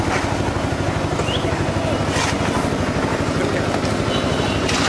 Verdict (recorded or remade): recorded